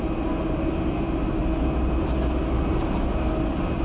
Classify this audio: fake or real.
real